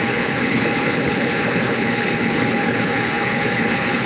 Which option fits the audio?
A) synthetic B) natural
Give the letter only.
A